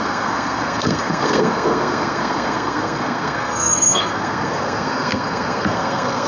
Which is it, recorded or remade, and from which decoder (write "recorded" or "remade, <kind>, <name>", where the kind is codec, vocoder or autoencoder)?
remade, codec, SNAC